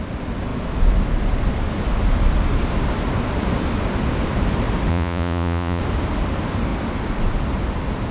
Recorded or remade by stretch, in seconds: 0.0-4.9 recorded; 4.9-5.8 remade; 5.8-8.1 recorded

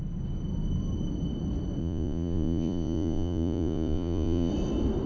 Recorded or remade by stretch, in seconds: 0.0-1.8 recorded; 1.8-4.5 remade; 4.5-5.1 recorded

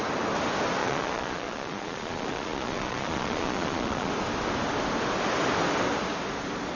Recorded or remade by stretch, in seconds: 0.0-0.8 recorded; 0.8-4.1 remade; 4.1-6.7 recorded

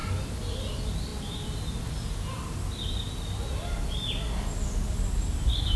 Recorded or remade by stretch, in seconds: 0.0-5.8 recorded